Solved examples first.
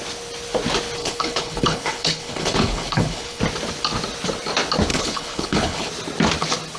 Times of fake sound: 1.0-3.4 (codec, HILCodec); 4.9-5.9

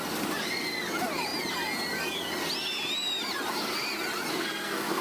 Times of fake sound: 4.3-5.0 (codec, SNAC)

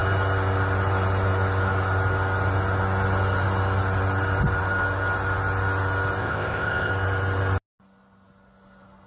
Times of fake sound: 6.2-6.9 (codec, ZipCodec)

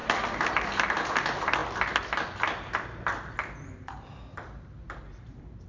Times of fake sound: none

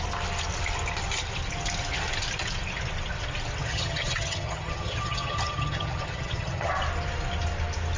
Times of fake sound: 3.6-6.7 (vocoder, HiFi-GAN)